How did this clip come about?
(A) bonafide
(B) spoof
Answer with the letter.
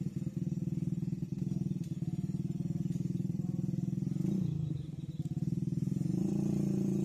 B